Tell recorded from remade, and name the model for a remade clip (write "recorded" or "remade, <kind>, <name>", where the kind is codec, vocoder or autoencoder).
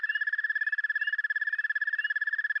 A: recorded